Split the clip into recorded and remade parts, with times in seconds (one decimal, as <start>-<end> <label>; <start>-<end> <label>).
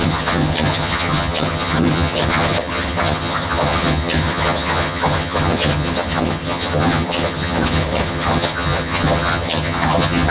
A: 0.0-10.3 remade